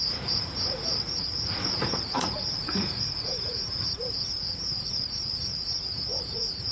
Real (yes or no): no